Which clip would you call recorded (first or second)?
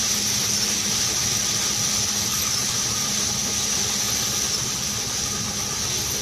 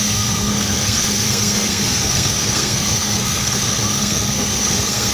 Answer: first